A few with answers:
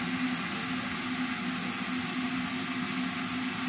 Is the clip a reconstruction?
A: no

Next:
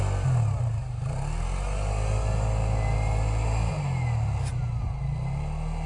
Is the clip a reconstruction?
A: no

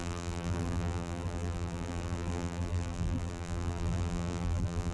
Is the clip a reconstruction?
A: yes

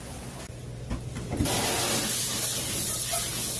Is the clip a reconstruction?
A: no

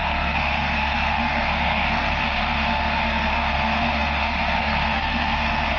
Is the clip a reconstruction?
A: yes